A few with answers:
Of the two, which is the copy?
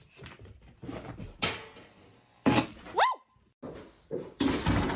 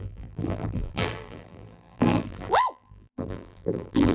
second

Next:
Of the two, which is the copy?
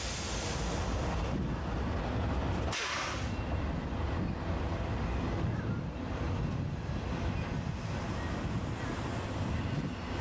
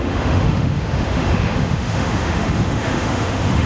second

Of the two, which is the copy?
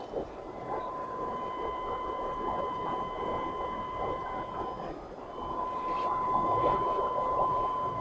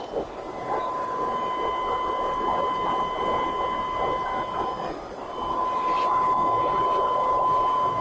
first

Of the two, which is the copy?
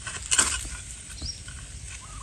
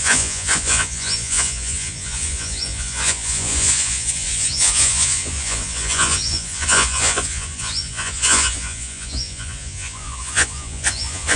second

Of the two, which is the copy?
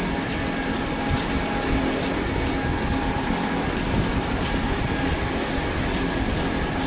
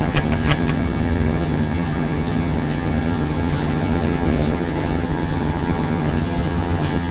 second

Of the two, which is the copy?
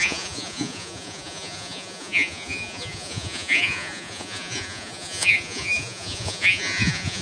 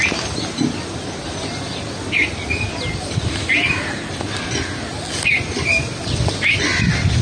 first